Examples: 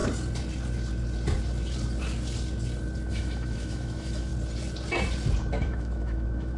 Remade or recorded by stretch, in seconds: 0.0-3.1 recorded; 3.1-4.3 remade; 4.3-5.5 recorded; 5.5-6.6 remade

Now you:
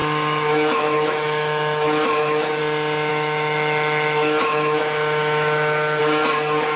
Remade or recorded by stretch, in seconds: 0.0-2.6 remade; 2.6-3.1 recorded; 3.1-6.0 remade; 6.0-6.8 recorded

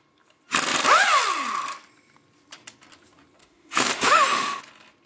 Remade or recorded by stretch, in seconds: 0.0-3.4 recorded; 3.4-4.6 remade; 4.6-5.1 recorded

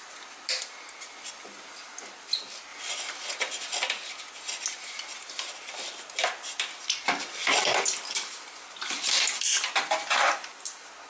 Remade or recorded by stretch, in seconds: 0.0-11.1 recorded

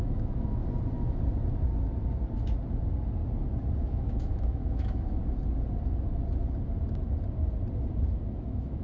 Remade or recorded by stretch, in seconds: 0.0-0.6 remade; 0.6-3.8 recorded; 3.8-5.2 remade; 5.2-8.4 recorded; 8.4-8.8 remade

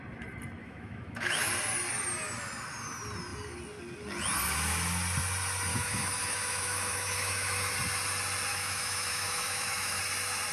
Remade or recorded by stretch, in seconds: 0.0-0.6 recorded; 0.6-1.5 remade; 1.5-5.7 recorded; 5.7-7.7 remade; 7.7-8.5 recorded; 8.5-10.0 remade; 10.0-10.5 recorded